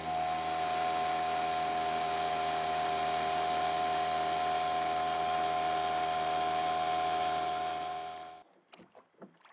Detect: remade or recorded recorded